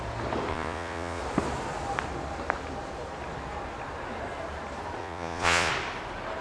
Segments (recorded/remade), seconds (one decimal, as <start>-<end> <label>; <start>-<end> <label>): 0.0-0.5 recorded; 0.5-1.2 remade; 1.2-5.0 recorded; 5.0-5.7 remade; 5.7-6.4 recorded